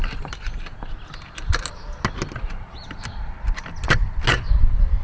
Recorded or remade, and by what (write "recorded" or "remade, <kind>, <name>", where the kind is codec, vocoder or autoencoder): recorded